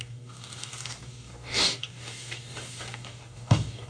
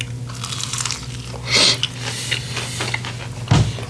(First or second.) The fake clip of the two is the first